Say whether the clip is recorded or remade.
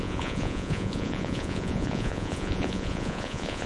remade